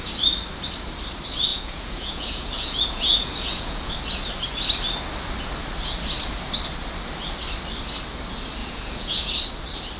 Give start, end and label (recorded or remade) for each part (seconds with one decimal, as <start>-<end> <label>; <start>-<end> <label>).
0.0-1.5 recorded; 1.5-3.9 remade; 3.9-8.6 recorded; 8.6-9.3 remade; 9.3-10.0 recorded